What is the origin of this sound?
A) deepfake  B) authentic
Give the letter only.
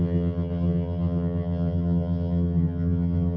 A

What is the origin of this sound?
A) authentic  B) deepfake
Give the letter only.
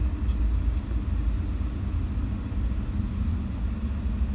A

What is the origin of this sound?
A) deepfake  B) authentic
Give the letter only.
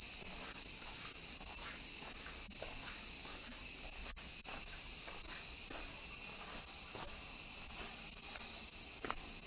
B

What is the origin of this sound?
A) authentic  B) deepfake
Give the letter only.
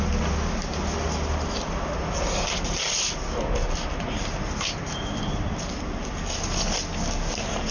A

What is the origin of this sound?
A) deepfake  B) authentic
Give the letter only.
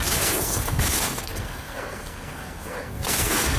A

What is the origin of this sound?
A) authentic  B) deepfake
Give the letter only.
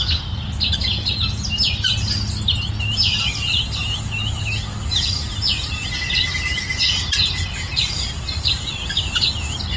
A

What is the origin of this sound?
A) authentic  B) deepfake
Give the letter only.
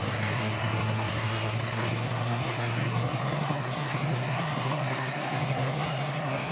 B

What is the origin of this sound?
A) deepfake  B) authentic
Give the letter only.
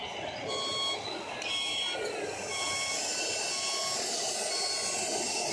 B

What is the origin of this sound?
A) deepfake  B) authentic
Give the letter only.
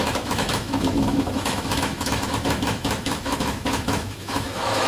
A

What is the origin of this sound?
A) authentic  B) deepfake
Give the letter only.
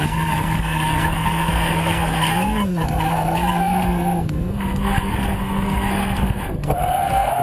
B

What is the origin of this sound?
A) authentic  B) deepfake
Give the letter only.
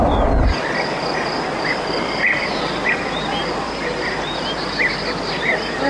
B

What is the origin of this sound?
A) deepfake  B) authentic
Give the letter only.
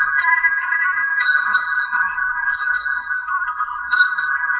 A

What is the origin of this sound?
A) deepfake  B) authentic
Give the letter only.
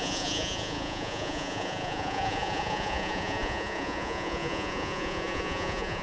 A